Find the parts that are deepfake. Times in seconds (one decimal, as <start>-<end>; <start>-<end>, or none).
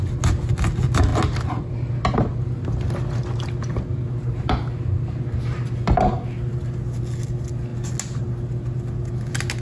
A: none